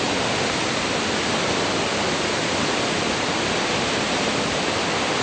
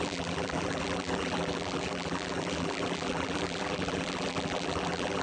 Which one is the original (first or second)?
first